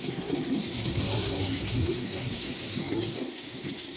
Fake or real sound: fake